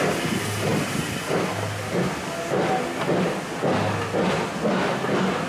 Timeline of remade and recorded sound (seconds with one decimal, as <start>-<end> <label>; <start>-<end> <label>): 0.0-5.5 recorded